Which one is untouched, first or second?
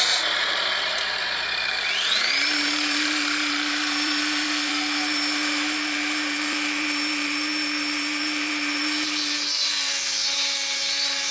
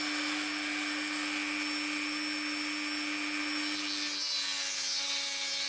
second